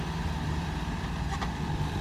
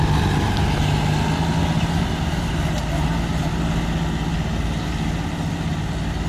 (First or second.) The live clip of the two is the second